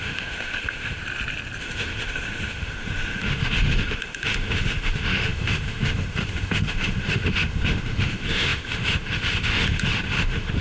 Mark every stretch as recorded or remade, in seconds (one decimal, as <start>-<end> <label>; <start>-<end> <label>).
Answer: 0.0-1.0 remade; 1.0-1.6 recorded; 1.6-10.6 remade